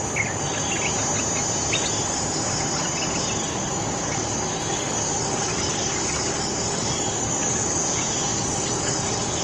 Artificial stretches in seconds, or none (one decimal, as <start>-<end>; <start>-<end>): 3.5-7.8; 8.3-9.4